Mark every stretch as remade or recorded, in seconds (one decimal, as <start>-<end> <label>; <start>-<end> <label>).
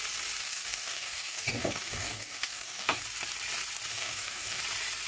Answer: 0.0-0.4 recorded; 0.4-3.0 remade; 3.0-3.9 recorded; 3.9-4.6 remade; 4.6-5.1 recorded